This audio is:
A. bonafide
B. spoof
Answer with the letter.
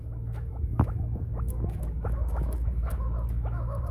B